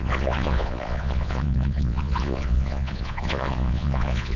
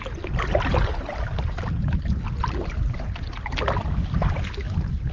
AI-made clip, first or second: first